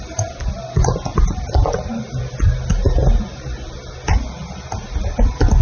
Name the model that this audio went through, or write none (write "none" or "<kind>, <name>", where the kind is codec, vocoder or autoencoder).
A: none